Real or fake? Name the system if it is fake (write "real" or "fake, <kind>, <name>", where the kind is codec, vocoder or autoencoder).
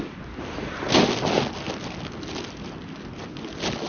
real